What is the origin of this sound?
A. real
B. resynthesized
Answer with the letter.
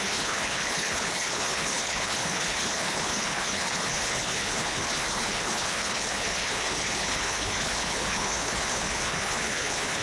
B